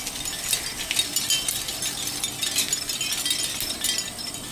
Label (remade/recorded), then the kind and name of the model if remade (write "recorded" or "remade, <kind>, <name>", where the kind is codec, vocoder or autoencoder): recorded